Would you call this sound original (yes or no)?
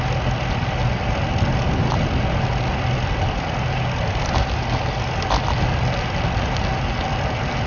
yes